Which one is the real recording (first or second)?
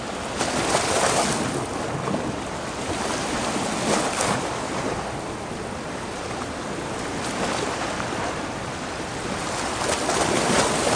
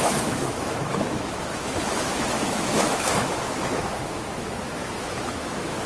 first